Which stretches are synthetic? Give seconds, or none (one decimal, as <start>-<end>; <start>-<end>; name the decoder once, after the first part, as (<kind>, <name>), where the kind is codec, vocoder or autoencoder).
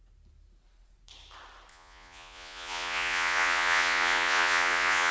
1.7-5.1 (vocoder, Vocos)